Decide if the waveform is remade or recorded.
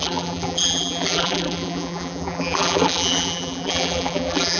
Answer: remade